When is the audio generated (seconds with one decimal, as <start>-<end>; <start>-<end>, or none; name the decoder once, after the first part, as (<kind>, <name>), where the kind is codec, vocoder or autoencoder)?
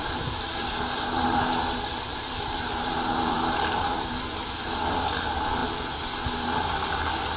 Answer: 2.1-4.1 (vocoder, BigVGAN v2)